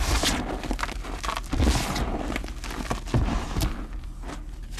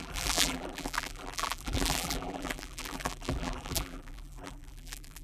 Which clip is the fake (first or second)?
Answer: second